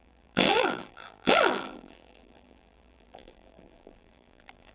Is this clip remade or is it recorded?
remade